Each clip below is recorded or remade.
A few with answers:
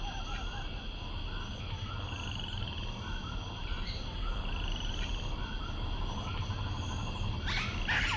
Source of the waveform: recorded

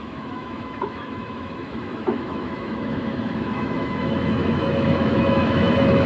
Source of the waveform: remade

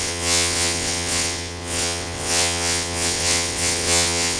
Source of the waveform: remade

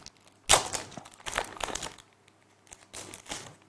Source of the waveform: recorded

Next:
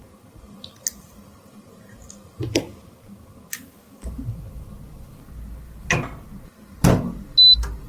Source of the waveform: recorded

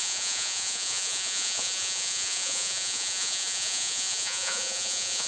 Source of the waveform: remade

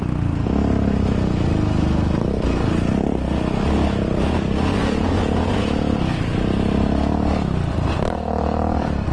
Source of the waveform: recorded